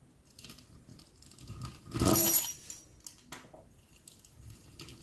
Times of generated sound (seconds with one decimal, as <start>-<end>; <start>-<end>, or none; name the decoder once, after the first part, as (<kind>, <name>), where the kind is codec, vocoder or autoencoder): none